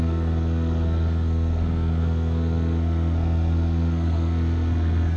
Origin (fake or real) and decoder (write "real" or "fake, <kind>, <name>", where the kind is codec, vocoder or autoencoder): fake, codec, SNAC